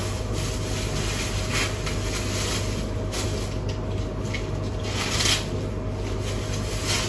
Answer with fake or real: real